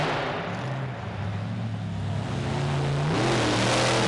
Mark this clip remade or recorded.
recorded